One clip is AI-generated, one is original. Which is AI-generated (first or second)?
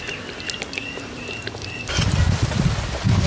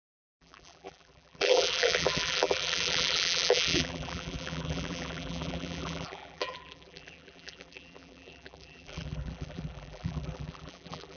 second